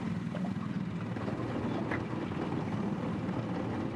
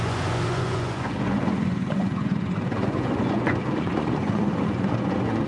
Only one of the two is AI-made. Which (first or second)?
second